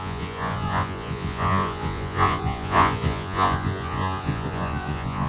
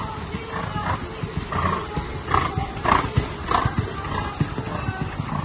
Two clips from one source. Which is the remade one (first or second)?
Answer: first